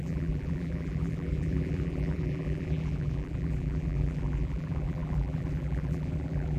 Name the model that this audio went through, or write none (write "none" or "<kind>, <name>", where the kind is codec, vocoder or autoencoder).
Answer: vocoder, BigVGAN v2